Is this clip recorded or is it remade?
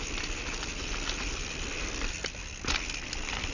recorded